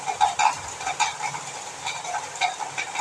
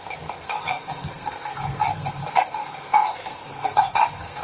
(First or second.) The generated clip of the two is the second